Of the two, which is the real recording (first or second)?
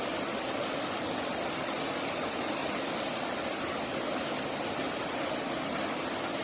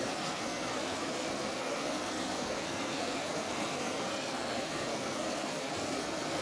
first